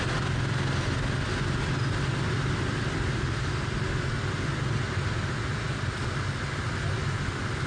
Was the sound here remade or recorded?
recorded